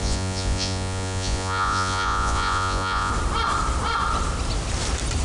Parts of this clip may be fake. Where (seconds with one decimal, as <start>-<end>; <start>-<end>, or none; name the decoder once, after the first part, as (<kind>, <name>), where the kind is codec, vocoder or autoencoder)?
0.0-3.1 (vocoder, Vocos)